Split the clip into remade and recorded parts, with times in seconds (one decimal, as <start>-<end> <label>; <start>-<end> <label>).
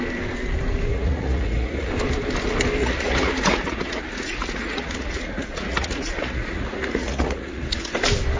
0.0-0.9 recorded; 0.9-1.9 remade; 1.9-2.8 recorded; 2.8-7.8 remade; 7.8-8.4 recorded